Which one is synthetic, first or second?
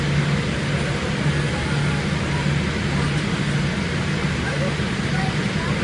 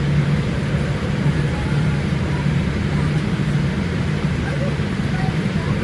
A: second